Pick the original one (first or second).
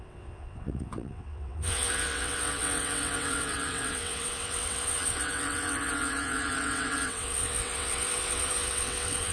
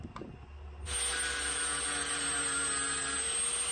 second